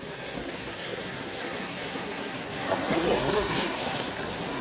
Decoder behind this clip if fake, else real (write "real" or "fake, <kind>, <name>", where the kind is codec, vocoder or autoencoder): fake, codec, SNAC